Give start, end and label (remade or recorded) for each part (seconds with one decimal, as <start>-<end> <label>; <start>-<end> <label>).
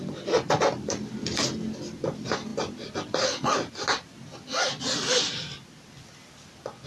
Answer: 0.0-6.9 recorded